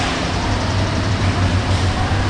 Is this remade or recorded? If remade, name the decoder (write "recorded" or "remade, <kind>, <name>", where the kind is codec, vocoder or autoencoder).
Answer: remade, vocoder, BigVGAN v2